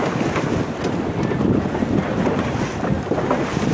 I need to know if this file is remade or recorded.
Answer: recorded